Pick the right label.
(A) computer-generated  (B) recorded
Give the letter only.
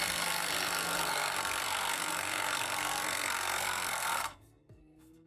A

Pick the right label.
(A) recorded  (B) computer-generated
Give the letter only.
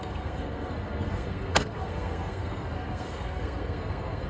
B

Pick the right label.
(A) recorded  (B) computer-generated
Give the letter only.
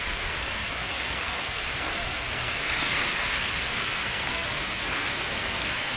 B